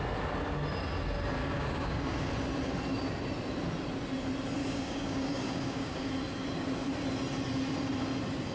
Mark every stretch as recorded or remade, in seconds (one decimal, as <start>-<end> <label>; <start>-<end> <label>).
0.0-1.4 recorded; 1.4-2.3 remade; 2.3-4.6 recorded; 4.6-6.1 remade; 6.1-8.5 recorded